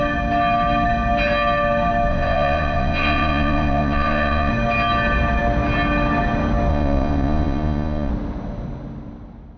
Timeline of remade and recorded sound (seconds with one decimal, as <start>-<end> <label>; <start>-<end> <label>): 0.0-2.1 recorded; 2.1-4.5 remade; 4.5-6.7 recorded; 6.7-8.1 remade; 8.1-9.6 recorded